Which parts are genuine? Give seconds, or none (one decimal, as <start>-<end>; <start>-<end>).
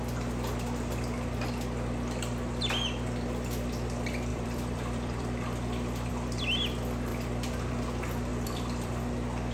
0.0-4.3; 6.1-7.1; 7.7-8.3; 9.0-9.5